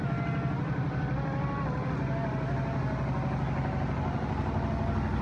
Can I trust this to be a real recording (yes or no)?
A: yes